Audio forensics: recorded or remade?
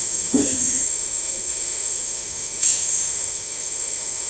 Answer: remade